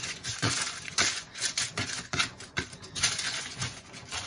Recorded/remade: remade